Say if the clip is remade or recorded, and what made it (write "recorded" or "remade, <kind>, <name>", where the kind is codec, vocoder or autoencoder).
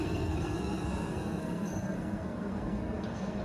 remade, codec, SNAC